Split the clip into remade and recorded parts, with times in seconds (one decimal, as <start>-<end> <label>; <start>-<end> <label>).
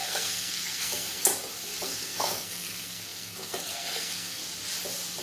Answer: 0.0-1.3 remade; 1.3-1.8 recorded; 1.8-4.4 remade; 4.4-5.2 recorded